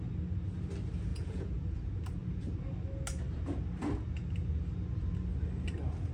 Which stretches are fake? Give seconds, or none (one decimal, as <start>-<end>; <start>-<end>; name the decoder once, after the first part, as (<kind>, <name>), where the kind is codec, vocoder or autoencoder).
1.1-1.8 (vocoder, Vocos)